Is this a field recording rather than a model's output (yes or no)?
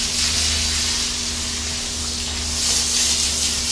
yes